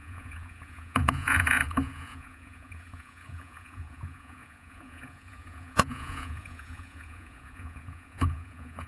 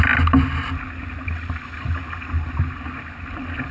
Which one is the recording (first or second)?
second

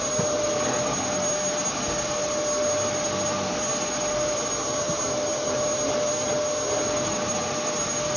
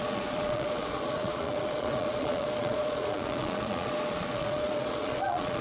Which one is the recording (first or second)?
first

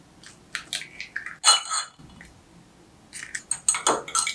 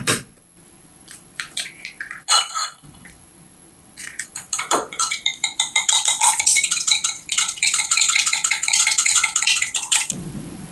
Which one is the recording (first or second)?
first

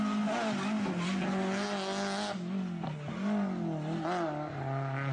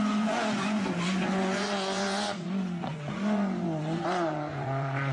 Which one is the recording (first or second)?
first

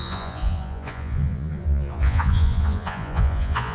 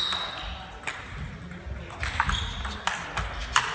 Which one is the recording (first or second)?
second